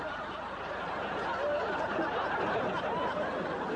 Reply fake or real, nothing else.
real